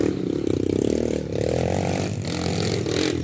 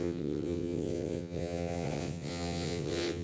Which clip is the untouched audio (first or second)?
first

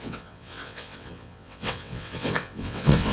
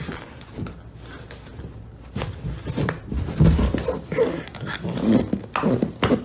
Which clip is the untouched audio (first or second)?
second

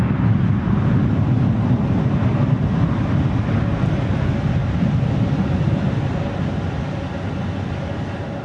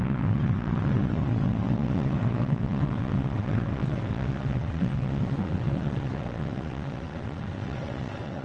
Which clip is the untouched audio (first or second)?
first